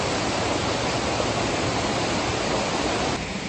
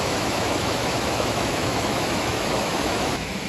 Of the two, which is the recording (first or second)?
first